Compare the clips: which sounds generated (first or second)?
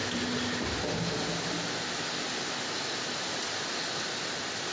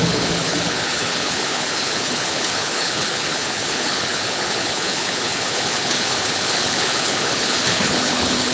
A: second